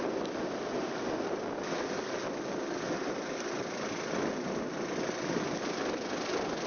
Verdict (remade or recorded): recorded